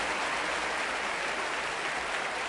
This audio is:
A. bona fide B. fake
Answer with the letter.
A